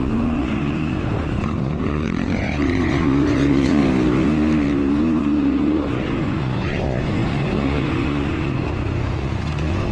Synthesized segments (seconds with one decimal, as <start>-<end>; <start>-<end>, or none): 0.0-3.8; 5.2-9.9